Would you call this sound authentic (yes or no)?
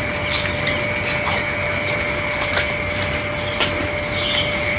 yes